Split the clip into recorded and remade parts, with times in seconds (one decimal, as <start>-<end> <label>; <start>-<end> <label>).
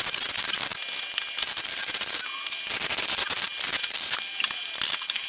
0.0-5.3 recorded